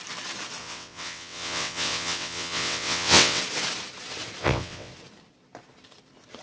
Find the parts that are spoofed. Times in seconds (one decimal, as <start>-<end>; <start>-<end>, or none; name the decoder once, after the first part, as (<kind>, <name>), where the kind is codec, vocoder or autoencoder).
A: 0.6-3.4 (vocoder, WaveNeXt); 4.4-4.9